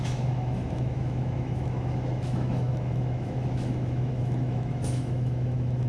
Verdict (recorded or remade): remade